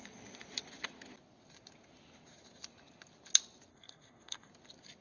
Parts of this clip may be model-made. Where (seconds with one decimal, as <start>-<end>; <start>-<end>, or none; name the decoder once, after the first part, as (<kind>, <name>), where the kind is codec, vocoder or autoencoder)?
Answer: 3.7-4.5 (codec, SNAC)